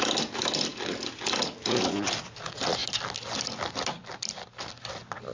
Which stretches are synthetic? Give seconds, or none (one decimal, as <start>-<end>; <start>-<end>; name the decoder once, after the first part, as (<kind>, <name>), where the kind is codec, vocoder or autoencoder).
none